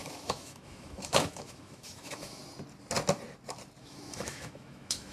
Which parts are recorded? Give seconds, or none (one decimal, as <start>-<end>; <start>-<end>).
2.4-3.8